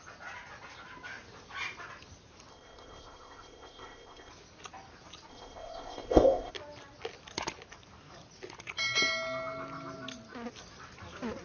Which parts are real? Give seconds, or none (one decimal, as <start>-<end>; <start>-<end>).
0.0-2.5; 4.3-5.3; 6.5-11.4